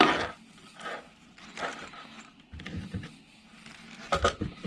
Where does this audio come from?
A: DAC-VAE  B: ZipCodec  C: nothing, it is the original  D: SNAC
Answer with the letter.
C